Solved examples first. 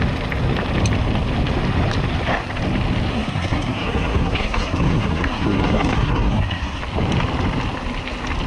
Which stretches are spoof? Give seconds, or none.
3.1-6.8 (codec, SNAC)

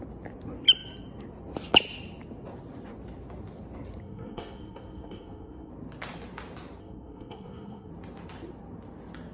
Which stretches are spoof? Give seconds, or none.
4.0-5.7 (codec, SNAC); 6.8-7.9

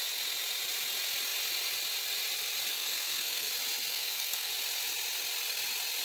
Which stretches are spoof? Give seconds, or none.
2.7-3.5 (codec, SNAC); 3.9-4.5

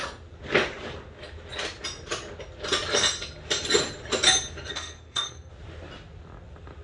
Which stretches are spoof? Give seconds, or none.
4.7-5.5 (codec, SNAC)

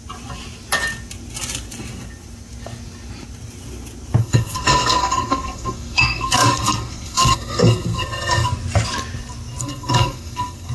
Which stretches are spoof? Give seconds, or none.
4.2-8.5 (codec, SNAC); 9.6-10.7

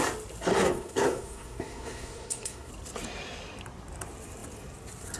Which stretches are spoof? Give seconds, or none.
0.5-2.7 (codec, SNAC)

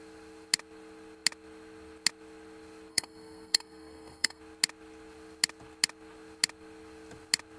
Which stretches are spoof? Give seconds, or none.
2.9-4.4 (codec, SNAC)